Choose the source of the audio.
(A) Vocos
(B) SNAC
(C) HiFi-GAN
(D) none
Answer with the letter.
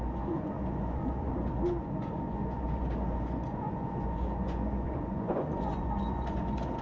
A